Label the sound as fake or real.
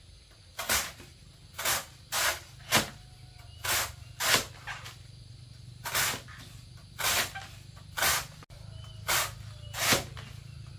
real